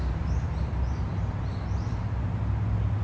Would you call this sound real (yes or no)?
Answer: yes